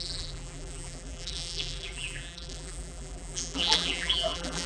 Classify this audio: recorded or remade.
remade